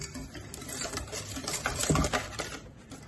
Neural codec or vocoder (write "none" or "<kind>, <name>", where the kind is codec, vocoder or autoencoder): none